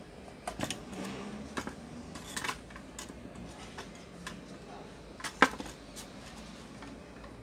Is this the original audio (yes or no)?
yes